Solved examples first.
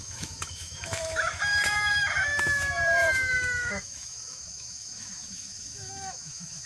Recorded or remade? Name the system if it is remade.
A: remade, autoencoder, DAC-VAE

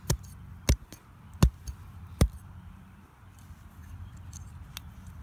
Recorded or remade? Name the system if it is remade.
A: recorded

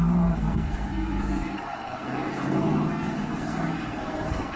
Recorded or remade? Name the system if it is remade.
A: remade, codec, SNAC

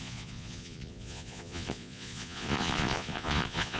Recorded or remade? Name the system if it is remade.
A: remade, vocoder, Vocos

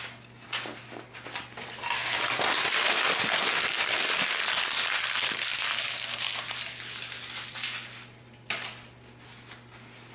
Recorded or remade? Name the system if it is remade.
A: recorded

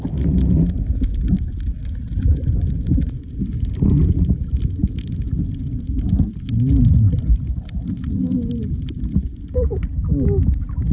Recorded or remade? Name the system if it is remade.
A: recorded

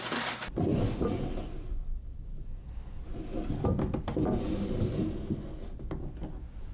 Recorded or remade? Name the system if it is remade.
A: recorded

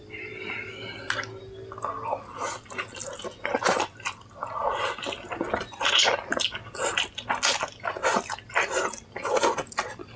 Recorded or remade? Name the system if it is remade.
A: recorded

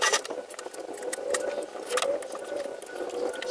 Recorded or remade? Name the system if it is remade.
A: recorded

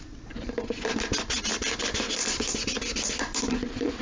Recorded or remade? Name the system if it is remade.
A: recorded